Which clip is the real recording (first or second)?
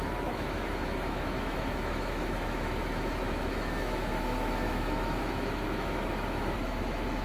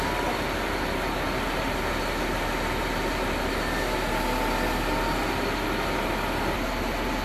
second